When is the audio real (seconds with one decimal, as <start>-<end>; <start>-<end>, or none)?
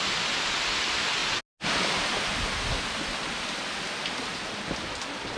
0.0-5.4